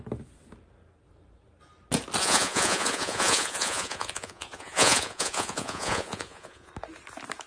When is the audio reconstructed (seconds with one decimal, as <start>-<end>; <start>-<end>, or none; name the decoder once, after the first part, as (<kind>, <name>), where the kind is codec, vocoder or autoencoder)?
2.2-6.7 (vocoder, Vocos)